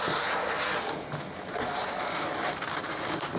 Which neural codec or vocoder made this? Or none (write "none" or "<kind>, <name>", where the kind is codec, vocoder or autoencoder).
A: none